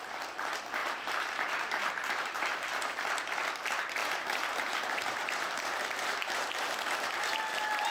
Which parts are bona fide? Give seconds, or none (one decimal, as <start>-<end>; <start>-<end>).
0.0-0.8; 2.9-4.0; 6.5-7.9